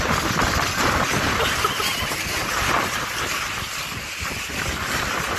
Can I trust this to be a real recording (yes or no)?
yes